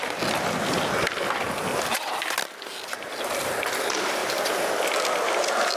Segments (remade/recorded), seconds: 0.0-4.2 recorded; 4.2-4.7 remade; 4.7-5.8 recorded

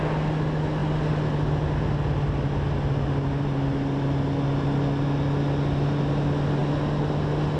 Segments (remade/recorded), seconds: 0.0-7.6 recorded

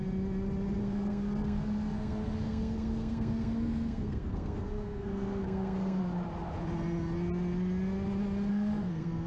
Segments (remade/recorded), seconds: 0.0-0.8 recorded; 0.8-6.0 remade; 6.0-8.5 recorded; 8.5-9.3 remade

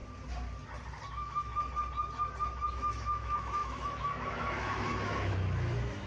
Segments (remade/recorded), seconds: 0.0-1.1 recorded; 1.1-1.5 remade; 1.5-2.7 recorded; 2.7-6.1 remade